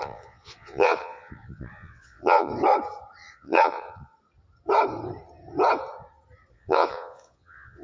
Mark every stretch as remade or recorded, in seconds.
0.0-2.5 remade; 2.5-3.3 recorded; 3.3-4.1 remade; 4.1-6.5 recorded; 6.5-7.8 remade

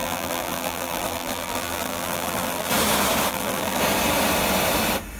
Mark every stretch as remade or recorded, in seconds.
0.0-2.7 remade; 2.7-3.3 recorded; 3.3-3.8 remade; 3.8-5.2 recorded

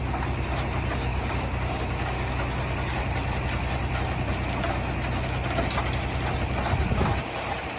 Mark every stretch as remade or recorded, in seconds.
0.0-1.1 recorded; 1.1-2.3 remade; 2.3-7.8 recorded

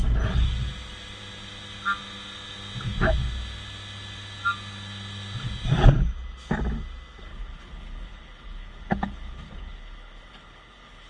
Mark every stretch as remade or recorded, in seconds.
0.0-7.3 recorded; 7.3-11.1 remade

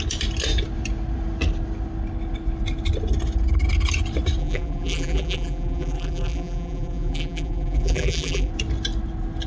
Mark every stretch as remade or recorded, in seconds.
0.0-4.4 recorded; 4.4-8.5 remade; 8.5-9.5 recorded

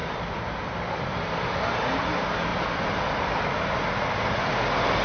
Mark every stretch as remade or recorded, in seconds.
0.0-0.7 remade; 0.7-5.0 recorded

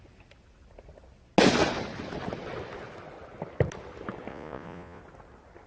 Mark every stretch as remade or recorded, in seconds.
0.0-4.3 recorded; 4.3-5.0 remade; 5.0-5.7 recorded